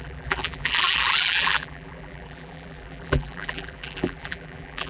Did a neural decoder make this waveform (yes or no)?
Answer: yes